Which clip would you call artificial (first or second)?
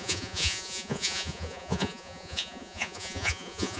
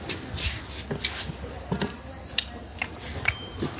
first